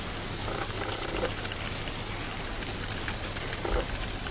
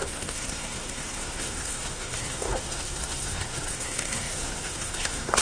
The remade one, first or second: second